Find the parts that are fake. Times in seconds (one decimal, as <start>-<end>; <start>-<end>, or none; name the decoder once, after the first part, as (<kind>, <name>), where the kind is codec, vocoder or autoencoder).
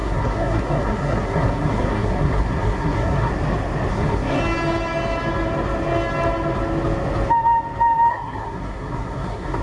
0.0-3.3 (codec, SNAC); 3.9-4.4; 8.1-9.6